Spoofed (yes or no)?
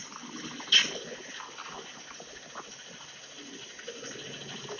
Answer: no